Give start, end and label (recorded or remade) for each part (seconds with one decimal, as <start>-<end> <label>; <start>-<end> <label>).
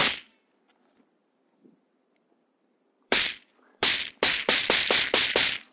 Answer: 0.0-1.2 recorded; 1.2-4.6 remade; 4.6-5.7 recorded